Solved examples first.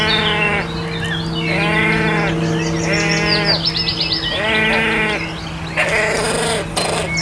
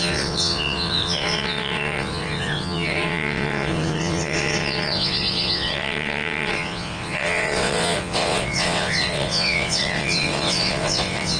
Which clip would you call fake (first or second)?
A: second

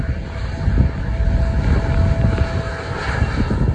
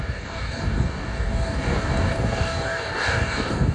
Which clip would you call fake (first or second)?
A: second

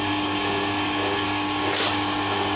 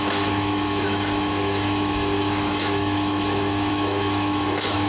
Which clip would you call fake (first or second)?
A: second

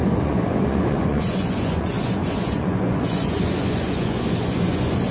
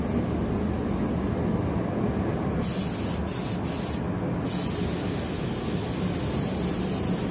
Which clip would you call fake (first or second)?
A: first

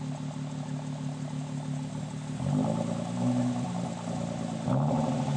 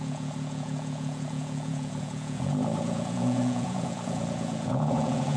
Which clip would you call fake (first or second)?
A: second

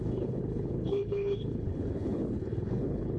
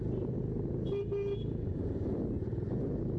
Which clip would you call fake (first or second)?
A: first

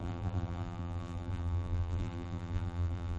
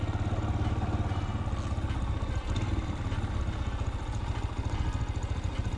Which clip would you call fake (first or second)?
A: first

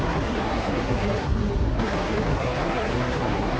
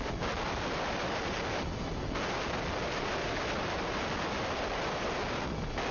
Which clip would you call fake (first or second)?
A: first